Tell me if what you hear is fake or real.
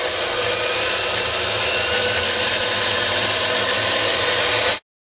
real